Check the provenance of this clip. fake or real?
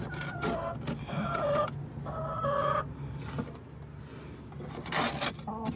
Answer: real